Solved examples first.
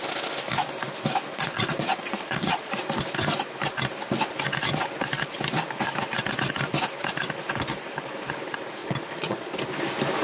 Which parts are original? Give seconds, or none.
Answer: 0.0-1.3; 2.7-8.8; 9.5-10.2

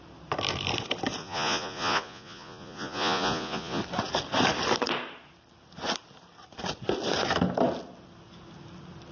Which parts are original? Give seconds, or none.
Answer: 0.0-1.2; 3.8-9.1

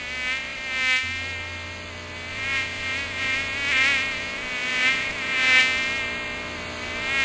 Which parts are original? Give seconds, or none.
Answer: 0.0-2.3; 5.6-7.2